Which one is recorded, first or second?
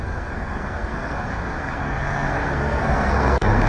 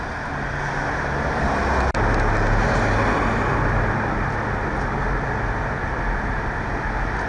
second